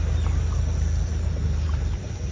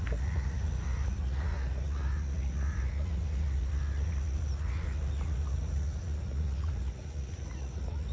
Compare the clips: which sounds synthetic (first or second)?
second